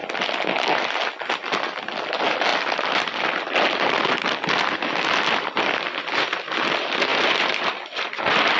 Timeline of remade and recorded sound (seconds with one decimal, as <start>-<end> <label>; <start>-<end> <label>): 0.0-2.5 recorded; 2.5-4.8 remade; 4.8-7.1 recorded; 7.1-7.7 remade; 7.7-8.6 recorded